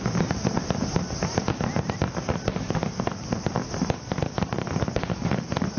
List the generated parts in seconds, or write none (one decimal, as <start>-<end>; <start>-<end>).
none